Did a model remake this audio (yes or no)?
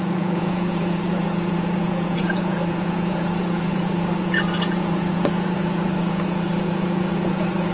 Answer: yes